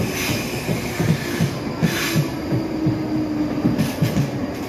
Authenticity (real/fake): real